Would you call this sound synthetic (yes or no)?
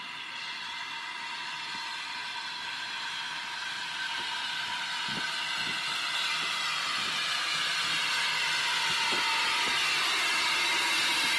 no